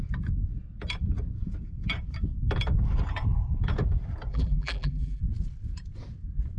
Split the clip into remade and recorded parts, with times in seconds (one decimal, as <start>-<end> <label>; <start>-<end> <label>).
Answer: 0.0-4.3 recorded; 4.3-5.2 remade; 5.2-6.6 recorded